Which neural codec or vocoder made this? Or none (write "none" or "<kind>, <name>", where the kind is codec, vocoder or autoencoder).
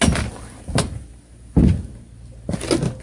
none